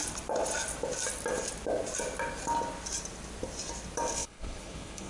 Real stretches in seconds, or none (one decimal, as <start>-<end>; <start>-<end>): 0.0-4.2

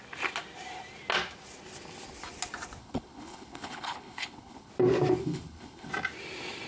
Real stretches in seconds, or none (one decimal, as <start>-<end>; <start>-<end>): 0.0-2.8; 4.7-5.2; 5.9-6.7

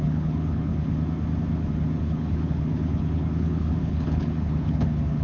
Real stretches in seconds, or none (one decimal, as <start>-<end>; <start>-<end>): 0.7-2.0

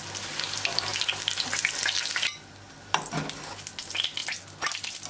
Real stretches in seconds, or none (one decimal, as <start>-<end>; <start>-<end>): 0.0-5.1